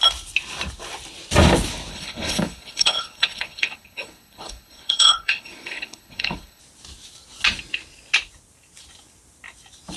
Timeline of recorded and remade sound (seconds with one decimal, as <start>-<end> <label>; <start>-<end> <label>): 0.0-1.9 recorded; 1.9-6.6 remade; 6.6-10.0 recorded